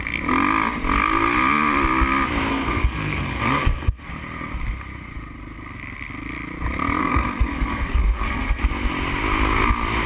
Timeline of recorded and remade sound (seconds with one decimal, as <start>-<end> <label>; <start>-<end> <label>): 0.0-2.5 recorded; 2.5-4.1 remade; 4.1-7.0 recorded; 7.0-8.6 remade; 8.6-10.1 recorded